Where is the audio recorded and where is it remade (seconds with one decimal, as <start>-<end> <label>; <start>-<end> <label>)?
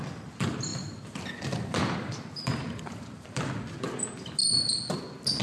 0.0-0.7 recorded; 0.7-3.9 remade; 3.9-5.4 recorded